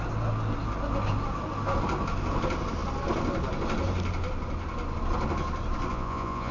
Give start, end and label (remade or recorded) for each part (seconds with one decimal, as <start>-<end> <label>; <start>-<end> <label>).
0.0-5.9 recorded; 5.9-6.5 remade